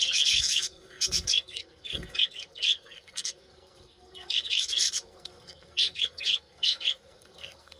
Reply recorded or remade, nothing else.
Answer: remade